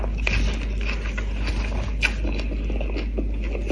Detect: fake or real real